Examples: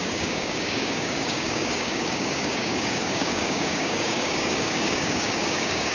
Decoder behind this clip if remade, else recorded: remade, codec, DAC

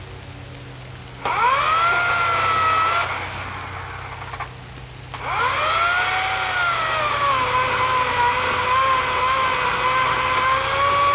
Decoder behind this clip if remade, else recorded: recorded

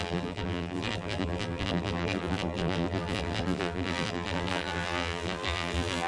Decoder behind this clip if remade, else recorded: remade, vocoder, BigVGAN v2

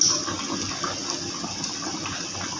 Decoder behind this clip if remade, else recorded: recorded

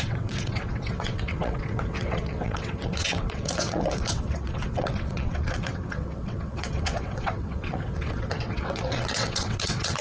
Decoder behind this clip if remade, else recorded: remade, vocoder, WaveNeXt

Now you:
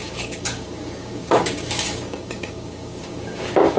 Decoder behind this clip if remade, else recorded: remade, codec, DAC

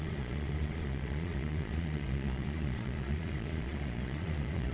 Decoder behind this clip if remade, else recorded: remade, vocoder, Vocos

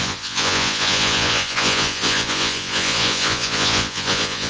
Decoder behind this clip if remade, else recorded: remade, vocoder, Vocos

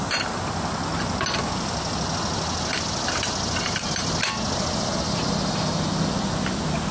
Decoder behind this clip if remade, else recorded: recorded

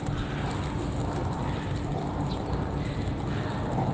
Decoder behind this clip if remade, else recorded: recorded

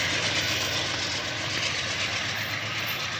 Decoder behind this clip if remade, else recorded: recorded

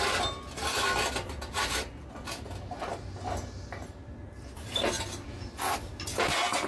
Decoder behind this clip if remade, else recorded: recorded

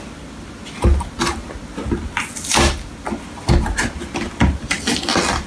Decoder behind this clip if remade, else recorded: recorded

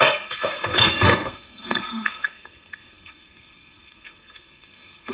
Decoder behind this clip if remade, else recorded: remade, codec, SNAC